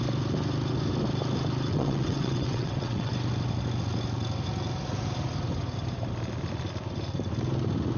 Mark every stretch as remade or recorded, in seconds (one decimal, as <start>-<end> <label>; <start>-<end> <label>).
0.0-1.7 recorded; 1.7-3.1 remade; 3.1-8.0 recorded